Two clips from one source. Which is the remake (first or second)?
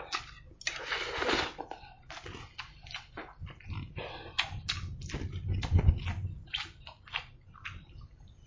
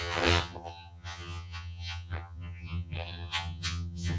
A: second